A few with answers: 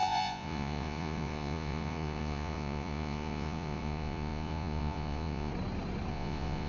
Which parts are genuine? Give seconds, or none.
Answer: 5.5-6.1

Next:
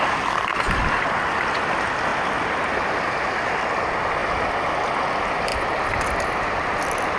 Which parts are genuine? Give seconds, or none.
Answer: 0.0-7.2

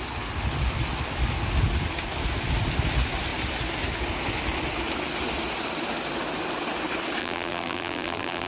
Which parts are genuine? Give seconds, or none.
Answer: 0.0-7.2

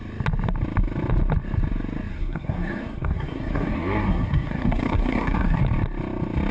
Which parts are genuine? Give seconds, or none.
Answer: 0.0-2.1; 5.6-6.5

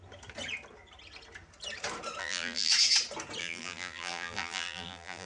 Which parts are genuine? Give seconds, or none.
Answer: 0.0-2.2; 2.7-3.4

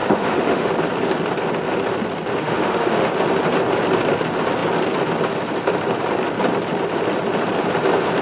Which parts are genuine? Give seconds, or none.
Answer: 0.7-2.3; 3.1-8.2

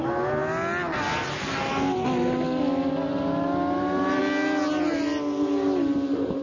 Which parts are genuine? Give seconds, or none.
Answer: 0.0-6.4